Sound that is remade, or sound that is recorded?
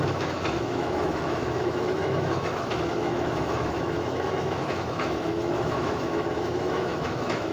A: remade